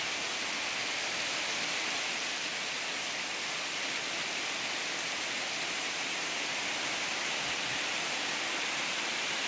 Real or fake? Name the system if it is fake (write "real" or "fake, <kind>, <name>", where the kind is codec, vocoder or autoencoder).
real